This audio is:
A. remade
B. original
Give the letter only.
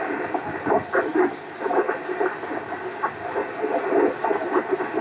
B